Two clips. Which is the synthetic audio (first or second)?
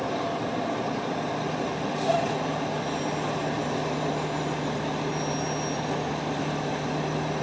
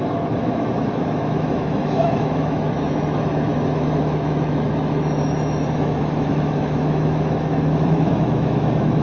second